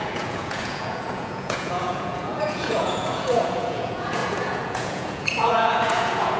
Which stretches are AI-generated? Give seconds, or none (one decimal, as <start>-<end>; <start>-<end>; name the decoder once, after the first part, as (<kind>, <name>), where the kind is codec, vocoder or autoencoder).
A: 0.0-6.4 (vocoder, Vocos)